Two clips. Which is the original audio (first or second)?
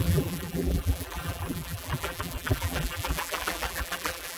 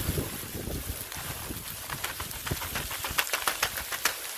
second